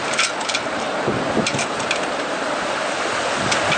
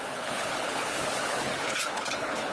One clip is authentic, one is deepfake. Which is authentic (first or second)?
first